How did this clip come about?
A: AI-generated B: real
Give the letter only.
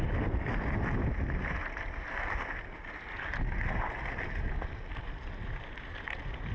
B